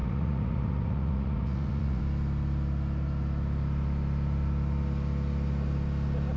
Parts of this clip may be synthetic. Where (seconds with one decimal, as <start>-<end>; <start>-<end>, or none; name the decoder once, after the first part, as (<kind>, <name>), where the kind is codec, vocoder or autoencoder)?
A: 0.0-2.0 (vocoder, Vocos)